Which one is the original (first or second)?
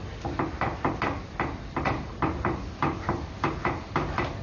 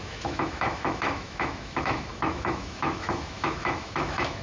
first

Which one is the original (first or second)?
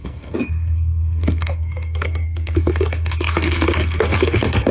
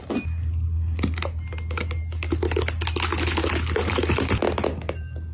second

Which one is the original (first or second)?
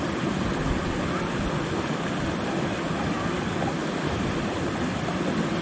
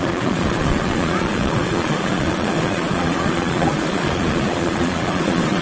first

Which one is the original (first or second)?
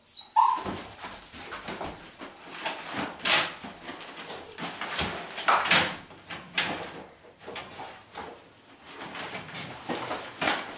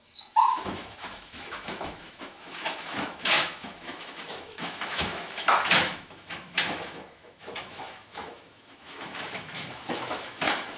first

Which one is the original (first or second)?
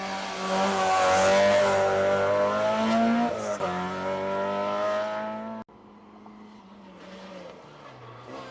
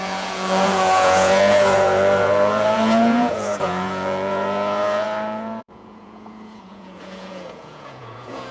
first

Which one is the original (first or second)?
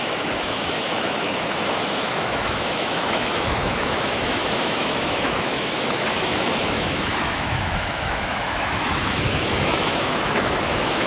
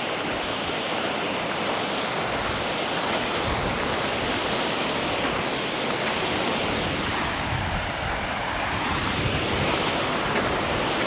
second